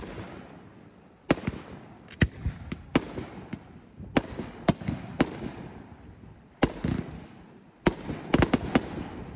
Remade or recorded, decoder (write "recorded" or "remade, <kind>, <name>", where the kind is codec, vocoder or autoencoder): recorded